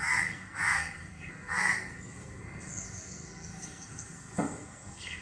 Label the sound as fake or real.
fake